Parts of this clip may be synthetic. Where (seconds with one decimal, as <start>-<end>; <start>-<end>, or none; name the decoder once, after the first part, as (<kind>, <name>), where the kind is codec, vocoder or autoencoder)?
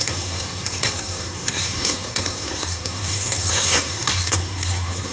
0.0-5.1 (codec, SNAC)